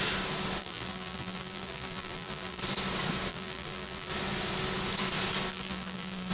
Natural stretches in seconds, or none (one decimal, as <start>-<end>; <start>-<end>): 0.0-0.6; 2.6-3.3; 4.1-5.5